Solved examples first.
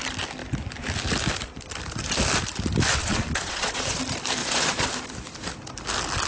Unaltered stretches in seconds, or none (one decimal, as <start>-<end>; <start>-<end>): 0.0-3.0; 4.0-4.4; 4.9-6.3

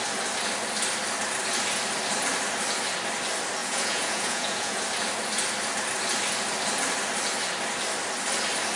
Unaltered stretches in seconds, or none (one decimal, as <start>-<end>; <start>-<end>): 0.0-3.6; 4.8-8.8

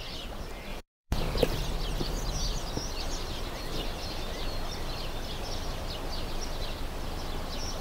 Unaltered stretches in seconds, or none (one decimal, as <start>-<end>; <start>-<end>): 0.0-0.7; 1.4-7.8

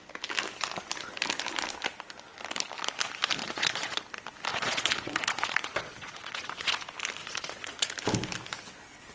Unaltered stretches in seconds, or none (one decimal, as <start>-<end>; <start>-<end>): 0.0-3.4; 4.0-4.5; 6.8-7.2; 7.9-9.1